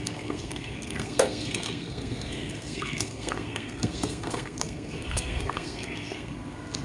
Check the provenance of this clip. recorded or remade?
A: remade